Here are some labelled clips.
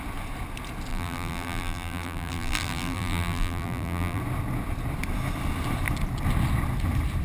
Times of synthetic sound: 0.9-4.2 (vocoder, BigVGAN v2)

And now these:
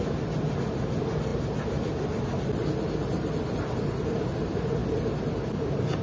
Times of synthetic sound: none

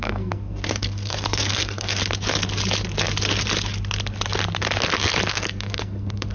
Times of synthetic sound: 0.0-2.0 (codec, SNAC); 5.3-6.3

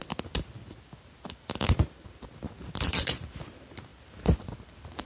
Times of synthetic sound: none

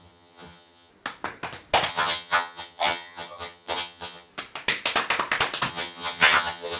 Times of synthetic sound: 0.0-0.9 (vocoder, HiFi-GAN); 1.9-4.3; 5.7-6.8

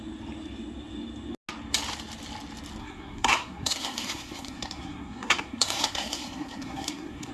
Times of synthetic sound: 2.8-7.3 (codec, SNAC)

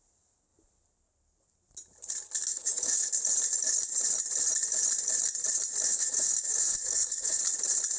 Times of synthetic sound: 2.5-3.1 (autoencoder, DAC-VAE); 5.9-7.4

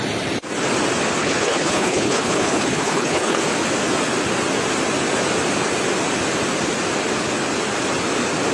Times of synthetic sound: 1.2-3.4 (codec, HILCodec)